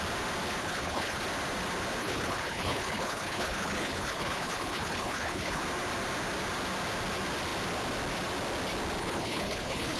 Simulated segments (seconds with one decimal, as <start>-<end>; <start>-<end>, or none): 0.6-1.2; 2.0-5.6; 9.0-10.0

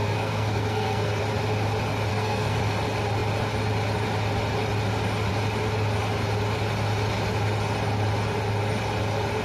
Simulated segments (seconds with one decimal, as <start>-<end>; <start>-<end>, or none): 0.0-1.2; 2.1-2.6

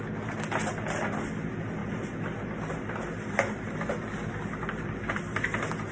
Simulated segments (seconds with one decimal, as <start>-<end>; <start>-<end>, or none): none

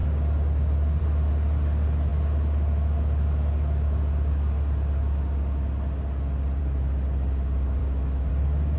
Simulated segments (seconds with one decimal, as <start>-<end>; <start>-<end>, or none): 7.8-8.3

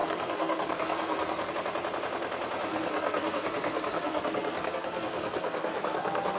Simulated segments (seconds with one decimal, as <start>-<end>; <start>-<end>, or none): 0.0-1.5; 2.7-6.4

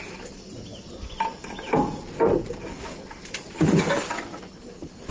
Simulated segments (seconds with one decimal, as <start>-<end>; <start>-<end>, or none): none

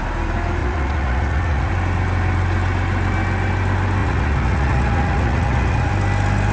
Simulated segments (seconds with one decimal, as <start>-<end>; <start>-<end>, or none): 0.6-1.7; 4.0-5.9

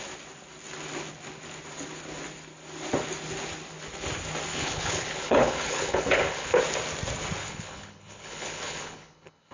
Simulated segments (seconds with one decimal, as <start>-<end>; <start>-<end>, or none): 4.5-6.6; 7.4-9.5